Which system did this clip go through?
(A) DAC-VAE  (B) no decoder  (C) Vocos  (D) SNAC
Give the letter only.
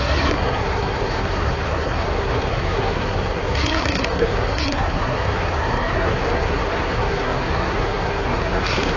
D